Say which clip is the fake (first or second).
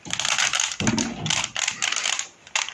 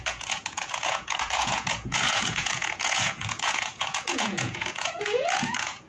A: second